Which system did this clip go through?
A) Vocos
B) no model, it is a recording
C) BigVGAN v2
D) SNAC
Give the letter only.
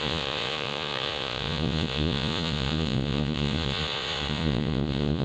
A